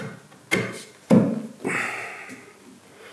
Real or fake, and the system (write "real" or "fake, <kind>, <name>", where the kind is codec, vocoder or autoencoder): real